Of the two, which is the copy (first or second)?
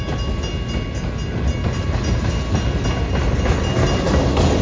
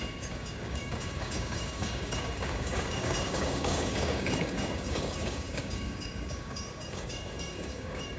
second